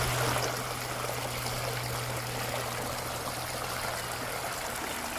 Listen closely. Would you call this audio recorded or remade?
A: recorded